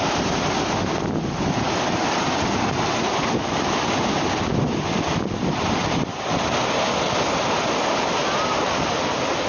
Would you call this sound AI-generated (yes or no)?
no